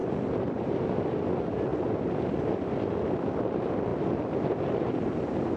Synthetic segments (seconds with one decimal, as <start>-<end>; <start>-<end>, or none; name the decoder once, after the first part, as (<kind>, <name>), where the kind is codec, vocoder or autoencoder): 0.0-1.2 (vocoder, BigVGAN v2); 1.7-3.5; 3.9-4.9

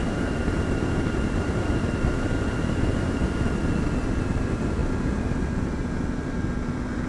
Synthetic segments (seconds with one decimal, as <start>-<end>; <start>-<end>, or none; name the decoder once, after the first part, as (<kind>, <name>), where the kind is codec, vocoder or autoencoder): 0.0-3.3 (vocoder, BigVGAN v2)

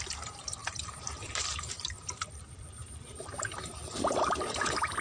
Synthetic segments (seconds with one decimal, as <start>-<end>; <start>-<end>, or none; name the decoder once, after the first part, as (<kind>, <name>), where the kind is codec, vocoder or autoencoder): 0.0-3.8 (vocoder, BigVGAN v2); 4.4-5.0

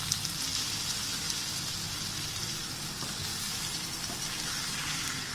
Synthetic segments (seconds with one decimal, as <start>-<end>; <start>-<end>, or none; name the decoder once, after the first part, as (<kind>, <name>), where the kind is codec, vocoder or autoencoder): 0.5-1.6 (vocoder, BigVGAN v2); 3.3-3.8

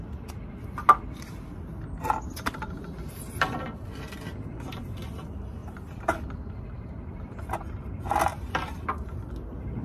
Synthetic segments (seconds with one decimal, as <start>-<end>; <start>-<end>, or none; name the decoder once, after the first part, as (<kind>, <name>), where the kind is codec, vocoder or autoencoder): 5.6-7.8 (vocoder, BigVGAN v2); 8.3-9.3

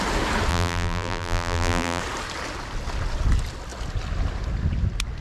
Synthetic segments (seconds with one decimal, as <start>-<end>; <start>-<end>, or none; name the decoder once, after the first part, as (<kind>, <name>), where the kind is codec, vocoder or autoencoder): 0.5-2.0 (vocoder, BigVGAN v2)

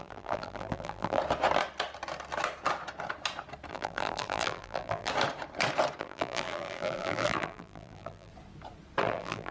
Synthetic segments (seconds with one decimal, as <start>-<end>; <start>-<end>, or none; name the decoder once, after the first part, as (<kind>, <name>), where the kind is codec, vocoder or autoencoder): 0.0-1.2 (vocoder, BigVGAN v2); 3.7-5.1; 6.0-8.3; 9.0-9.5

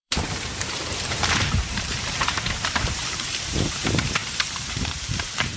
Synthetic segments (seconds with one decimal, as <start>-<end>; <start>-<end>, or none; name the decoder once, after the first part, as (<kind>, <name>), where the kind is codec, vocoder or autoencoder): 0.0-4.2 (vocoder, BigVGAN v2); 4.7-5.6